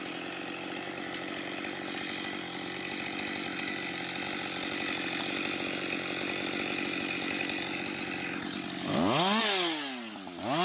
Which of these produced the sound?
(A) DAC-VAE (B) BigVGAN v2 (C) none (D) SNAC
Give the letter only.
C